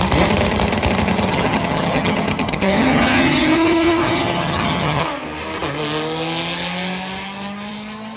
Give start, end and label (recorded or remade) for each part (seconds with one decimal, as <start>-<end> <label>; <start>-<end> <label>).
0.0-1.3 recorded; 1.3-5.0 remade; 5.0-8.2 recorded